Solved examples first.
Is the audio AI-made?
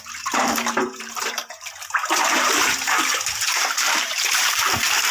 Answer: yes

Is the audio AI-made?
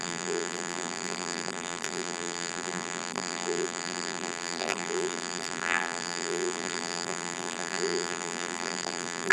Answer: yes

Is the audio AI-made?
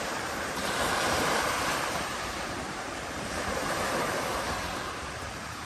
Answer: yes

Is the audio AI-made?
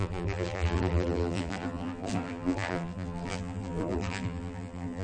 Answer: yes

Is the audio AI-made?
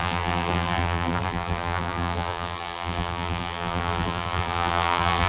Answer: yes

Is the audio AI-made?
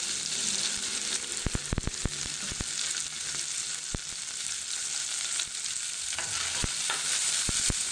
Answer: no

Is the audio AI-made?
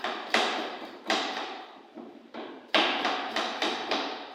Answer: yes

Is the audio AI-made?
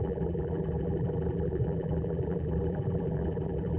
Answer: yes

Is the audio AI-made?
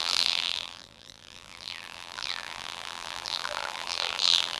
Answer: yes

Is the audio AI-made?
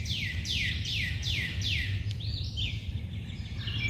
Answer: yes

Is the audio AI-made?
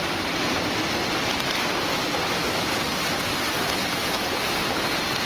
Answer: no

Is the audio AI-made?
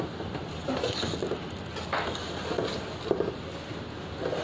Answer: no